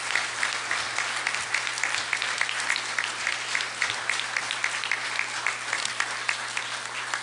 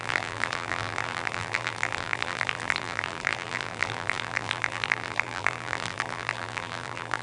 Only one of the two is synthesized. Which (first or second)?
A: second